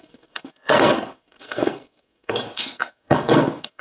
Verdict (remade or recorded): remade